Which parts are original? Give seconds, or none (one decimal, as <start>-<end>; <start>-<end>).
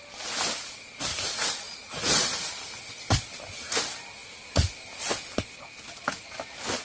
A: 0.0-1.1; 2.4-6.8